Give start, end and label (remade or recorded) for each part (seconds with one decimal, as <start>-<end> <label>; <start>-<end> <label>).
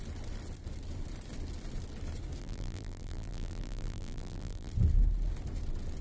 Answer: 0.0-2.4 recorded; 2.4-4.7 remade; 4.7-6.0 recorded